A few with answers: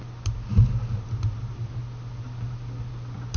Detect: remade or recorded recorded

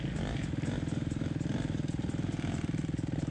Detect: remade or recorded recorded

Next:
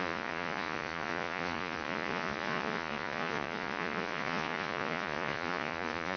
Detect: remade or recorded remade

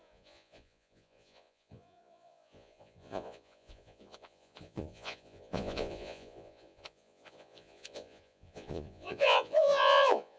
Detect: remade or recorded remade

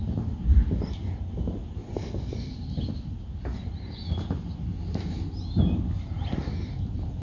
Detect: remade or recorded recorded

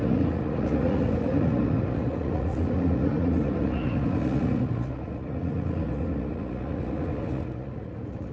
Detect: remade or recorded remade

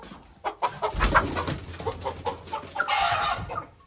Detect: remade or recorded recorded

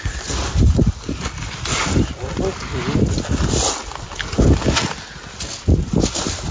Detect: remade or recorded recorded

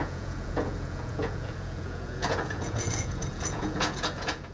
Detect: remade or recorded remade